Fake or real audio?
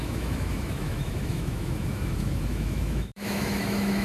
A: fake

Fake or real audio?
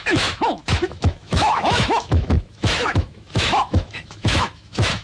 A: fake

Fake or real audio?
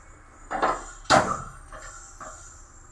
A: real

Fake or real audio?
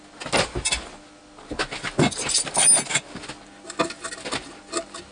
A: real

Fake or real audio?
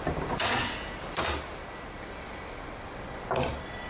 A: real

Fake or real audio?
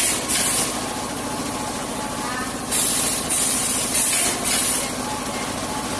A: real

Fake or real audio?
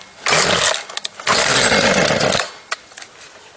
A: real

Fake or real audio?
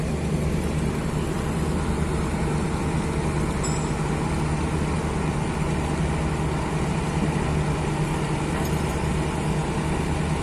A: real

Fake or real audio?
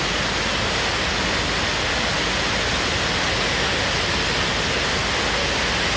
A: real